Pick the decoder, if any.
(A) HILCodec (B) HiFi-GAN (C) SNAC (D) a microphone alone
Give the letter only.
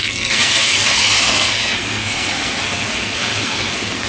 C